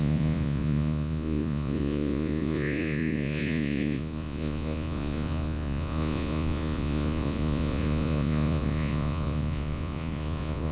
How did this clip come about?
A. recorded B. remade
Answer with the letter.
B